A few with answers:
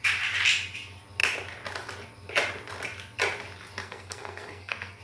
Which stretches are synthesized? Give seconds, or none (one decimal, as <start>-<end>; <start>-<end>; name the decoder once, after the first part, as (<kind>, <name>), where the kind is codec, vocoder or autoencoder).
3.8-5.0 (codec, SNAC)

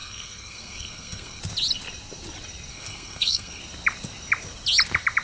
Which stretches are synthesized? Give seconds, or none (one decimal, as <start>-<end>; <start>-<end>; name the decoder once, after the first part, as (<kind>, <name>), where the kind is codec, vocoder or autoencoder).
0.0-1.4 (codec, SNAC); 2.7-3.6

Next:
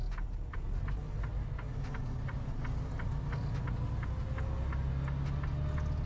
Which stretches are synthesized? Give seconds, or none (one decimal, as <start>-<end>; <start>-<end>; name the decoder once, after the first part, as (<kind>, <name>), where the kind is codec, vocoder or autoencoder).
none